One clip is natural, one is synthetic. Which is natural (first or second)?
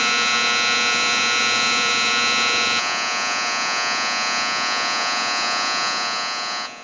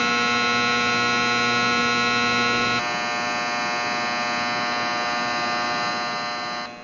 second